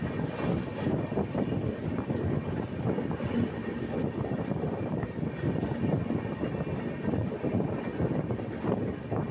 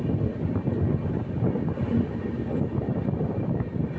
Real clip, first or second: second